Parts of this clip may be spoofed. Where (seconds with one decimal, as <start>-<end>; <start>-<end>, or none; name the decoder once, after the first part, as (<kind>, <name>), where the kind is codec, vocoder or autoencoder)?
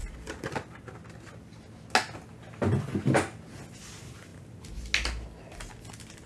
none